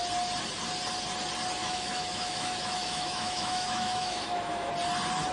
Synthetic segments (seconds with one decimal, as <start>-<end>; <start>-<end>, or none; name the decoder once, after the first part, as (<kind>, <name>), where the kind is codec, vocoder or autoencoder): 1.6-4.7 (autoencoder, DAC-VAE)